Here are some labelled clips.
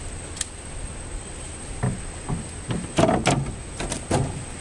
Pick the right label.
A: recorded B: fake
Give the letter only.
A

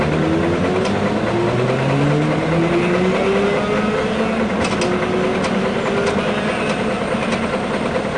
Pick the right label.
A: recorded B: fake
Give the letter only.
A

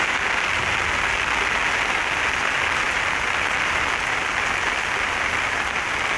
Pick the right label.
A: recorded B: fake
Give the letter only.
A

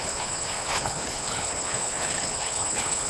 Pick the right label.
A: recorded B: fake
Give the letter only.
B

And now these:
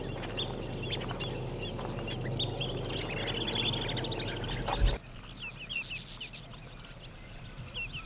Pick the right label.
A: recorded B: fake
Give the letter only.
A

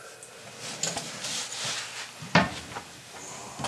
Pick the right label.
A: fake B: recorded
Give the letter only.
B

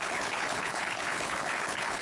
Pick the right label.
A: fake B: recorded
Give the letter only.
A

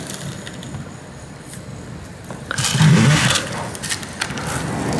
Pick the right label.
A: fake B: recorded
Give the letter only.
B